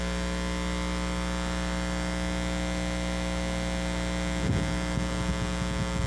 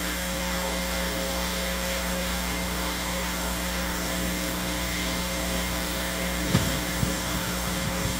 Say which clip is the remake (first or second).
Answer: second